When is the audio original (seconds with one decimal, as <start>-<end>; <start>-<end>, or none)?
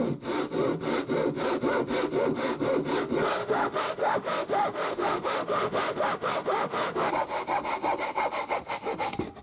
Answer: 0.0-3.4; 7.1-9.4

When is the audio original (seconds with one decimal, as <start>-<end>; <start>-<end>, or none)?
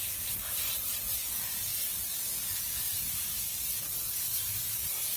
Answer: 0.0-5.2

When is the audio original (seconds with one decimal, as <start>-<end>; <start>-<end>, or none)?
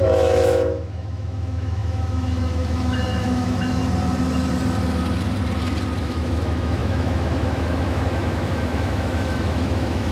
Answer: 3.8-6.0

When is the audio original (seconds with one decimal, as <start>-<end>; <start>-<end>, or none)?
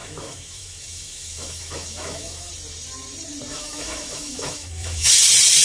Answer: 2.5-3.5; 5.1-5.6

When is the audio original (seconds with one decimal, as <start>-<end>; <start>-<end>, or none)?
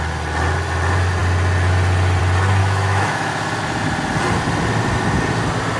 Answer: 0.0-2.6; 3.3-5.8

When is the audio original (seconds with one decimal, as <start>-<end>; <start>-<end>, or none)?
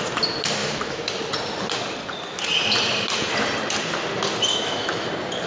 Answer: 0.0-0.6; 1.1-4.5; 5.1-5.5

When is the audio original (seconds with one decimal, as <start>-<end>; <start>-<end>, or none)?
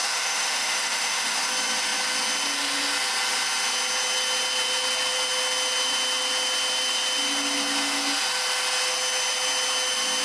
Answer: 1.5-10.2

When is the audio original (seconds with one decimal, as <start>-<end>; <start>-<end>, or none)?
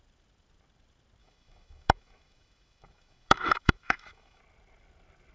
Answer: 0.0-1.2; 4.4-5.3